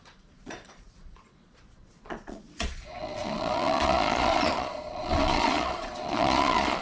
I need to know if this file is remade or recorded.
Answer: remade